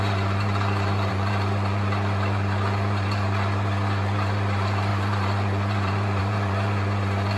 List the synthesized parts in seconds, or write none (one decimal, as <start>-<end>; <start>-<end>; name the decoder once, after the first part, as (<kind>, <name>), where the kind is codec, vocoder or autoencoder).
0.0-7.4 (vocoder, BigVGAN v2)